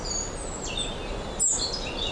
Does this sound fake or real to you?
real